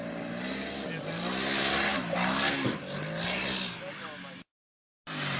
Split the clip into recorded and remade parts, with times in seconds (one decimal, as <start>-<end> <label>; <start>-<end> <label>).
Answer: 0.0-5.4 recorded

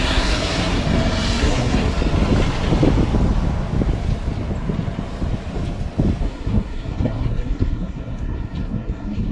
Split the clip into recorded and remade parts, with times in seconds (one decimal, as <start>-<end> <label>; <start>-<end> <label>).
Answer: 0.0-0.8 remade; 0.8-1.4 recorded; 1.4-1.9 remade; 1.9-6.2 recorded; 6.2-9.3 remade